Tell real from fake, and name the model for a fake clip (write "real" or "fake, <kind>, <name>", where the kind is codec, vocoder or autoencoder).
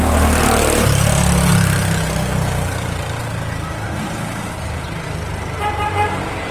real